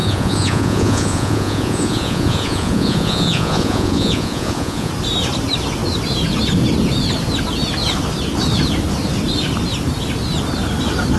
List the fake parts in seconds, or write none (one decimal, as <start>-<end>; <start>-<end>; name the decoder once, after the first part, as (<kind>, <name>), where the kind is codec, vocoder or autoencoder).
0.0-4.9 (vocoder, Vocos)